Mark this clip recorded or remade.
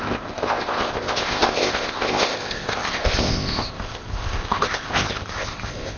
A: remade